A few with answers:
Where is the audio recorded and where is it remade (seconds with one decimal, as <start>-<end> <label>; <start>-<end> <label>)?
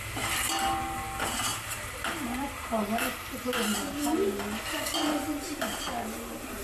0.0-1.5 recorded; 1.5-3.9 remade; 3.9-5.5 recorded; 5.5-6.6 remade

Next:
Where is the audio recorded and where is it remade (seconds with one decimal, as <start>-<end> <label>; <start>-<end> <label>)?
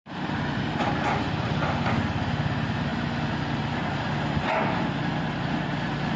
0.0-6.2 recorded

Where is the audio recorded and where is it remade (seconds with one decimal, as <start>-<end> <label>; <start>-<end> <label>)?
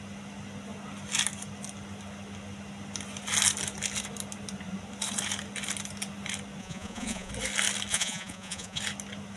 0.0-6.6 recorded; 6.6-7.3 remade; 7.3-7.9 recorded; 7.9-8.8 remade; 8.8-9.4 recorded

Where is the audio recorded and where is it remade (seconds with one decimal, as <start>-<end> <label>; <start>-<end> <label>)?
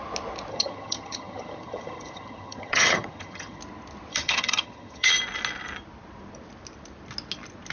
0.0-0.5 recorded; 0.5-3.6 remade; 3.6-4.1 recorded; 4.1-5.1 remade; 5.1-7.7 recorded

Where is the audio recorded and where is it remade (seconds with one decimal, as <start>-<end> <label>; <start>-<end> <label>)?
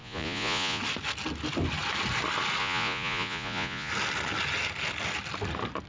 0.0-0.8 remade; 0.8-2.6 recorded; 2.6-3.9 remade; 3.9-5.9 recorded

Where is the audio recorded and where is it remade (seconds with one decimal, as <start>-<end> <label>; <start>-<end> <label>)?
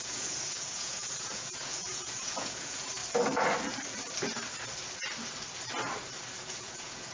0.0-3.0 remade; 3.0-6.4 recorded; 6.4-7.1 remade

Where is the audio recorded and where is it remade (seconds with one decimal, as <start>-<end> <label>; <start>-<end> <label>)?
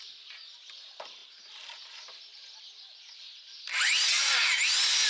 0.0-5.1 recorded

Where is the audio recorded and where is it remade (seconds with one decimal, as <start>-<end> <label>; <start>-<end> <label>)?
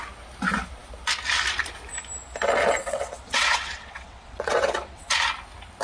0.0-2.8 recorded; 2.8-5.1 remade; 5.1-5.8 recorded